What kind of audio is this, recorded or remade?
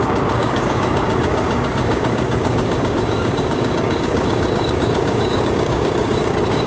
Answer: remade